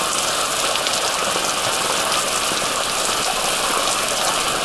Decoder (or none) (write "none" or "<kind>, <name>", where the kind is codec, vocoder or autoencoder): none